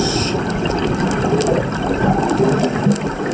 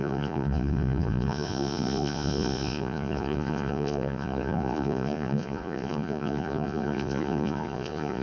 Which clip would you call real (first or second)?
first